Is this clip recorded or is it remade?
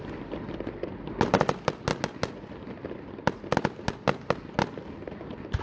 recorded